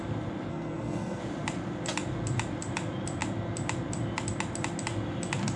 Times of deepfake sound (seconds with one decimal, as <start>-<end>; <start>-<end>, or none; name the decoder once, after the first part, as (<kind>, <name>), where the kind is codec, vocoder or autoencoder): 0.5-1.2 (codec, SNAC)